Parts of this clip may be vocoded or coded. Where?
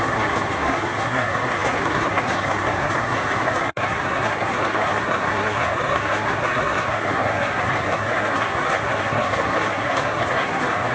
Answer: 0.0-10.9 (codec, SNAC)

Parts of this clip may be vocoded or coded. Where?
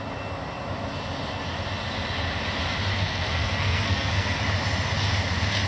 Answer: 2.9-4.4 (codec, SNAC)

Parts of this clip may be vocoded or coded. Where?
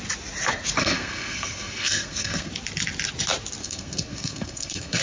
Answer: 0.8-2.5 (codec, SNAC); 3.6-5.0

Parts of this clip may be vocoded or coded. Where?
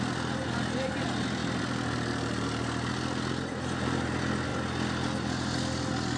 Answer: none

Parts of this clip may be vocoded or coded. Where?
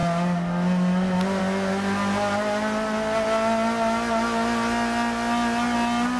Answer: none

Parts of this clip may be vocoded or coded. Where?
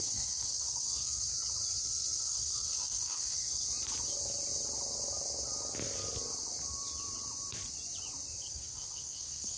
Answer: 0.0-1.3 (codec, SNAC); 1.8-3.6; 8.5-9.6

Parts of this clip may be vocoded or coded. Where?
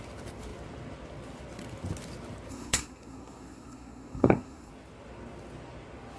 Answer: 2.5-4.7 (codec, SNAC)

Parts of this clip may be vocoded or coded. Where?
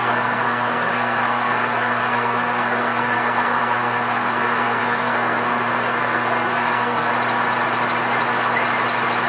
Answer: 0.0-7.1 (codec, SNAC)